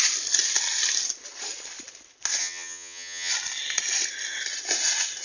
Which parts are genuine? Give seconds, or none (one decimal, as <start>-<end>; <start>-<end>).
0.0-2.4; 3.3-5.2